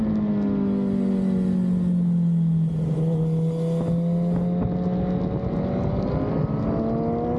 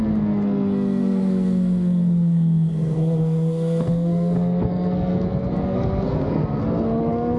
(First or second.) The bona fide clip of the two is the first